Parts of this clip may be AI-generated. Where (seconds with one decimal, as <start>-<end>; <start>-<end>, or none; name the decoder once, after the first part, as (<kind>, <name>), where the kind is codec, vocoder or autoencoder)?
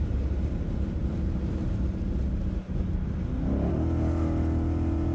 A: none